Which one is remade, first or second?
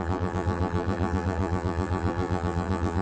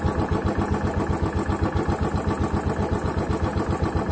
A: first